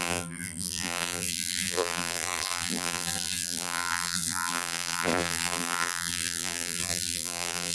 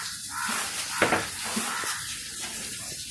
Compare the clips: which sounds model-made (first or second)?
first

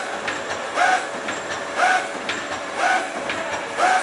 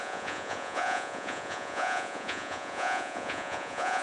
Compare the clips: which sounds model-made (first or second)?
second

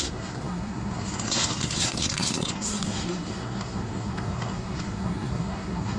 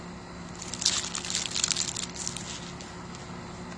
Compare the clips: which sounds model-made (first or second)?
first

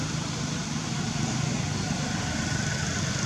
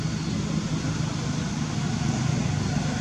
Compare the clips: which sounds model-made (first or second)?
first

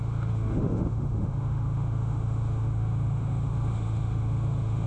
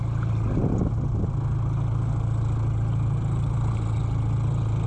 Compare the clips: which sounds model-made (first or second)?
first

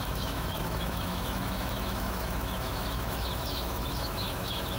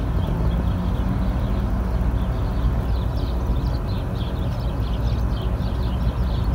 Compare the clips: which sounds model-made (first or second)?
first